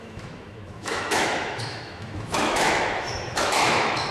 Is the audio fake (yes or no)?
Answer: yes